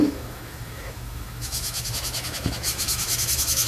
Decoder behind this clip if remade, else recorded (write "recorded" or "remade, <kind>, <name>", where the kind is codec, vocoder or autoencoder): remade, autoencoder, DAC-VAE